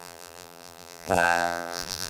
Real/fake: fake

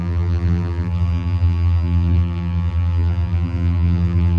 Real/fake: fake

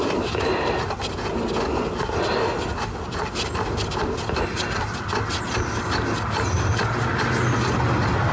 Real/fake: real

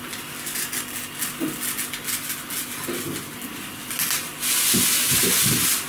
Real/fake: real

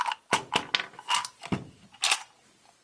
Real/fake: real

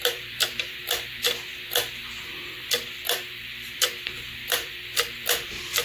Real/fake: fake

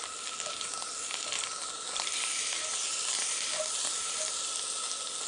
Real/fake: real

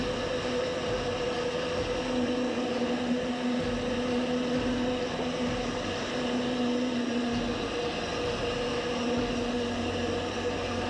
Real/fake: real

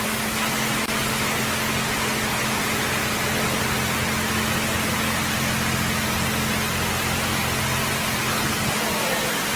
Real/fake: real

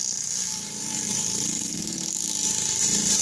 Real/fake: real